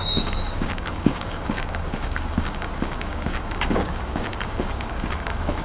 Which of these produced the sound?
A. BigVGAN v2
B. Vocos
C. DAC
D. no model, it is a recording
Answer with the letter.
C